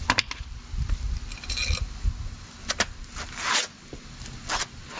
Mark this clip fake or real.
real